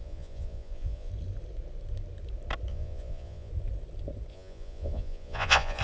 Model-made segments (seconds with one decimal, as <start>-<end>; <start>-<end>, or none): 0.0-1.1; 2.7-3.5; 4.3-5.8